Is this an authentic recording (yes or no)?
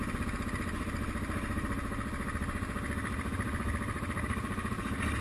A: no